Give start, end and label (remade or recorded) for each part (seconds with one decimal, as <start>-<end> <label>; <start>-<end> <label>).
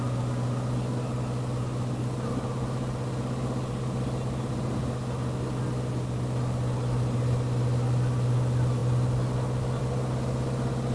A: 0.0-10.9 recorded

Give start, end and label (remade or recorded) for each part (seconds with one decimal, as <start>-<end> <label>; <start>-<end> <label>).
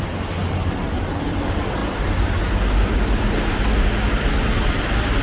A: 0.0-5.2 recorded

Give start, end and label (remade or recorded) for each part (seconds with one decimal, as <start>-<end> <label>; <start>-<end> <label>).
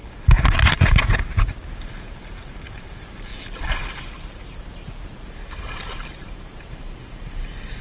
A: 0.0-2.5 recorded; 2.5-3.3 remade; 3.3-4.0 recorded; 4.0-7.8 remade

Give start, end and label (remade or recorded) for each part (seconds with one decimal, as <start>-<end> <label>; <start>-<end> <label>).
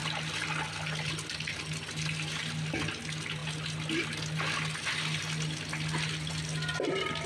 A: 0.0-7.3 recorded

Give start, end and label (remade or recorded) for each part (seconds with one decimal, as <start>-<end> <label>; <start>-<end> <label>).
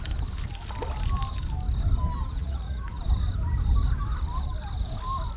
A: 0.0-2.4 recorded; 2.4-3.0 remade; 3.0-5.4 recorded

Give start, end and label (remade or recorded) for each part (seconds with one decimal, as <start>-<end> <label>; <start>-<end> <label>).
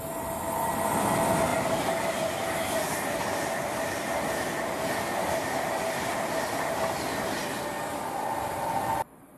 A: 0.0-9.4 recorded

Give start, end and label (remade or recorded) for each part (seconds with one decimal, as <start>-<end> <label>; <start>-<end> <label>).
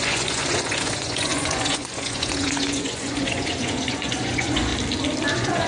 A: 0.0-4.7 remade; 4.7-5.3 recorded; 5.3-5.7 remade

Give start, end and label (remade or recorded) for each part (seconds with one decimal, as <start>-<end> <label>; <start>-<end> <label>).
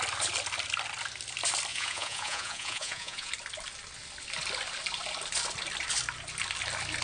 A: 0.0-1.7 recorded; 1.7-3.3 remade; 3.3-7.0 recorded